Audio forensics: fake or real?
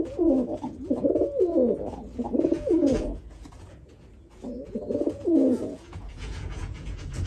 fake